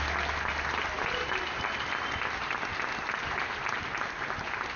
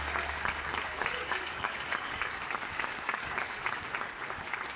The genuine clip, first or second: first